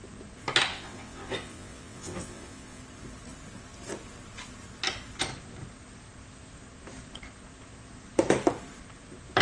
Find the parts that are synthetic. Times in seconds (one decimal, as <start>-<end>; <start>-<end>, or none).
0.7-2.8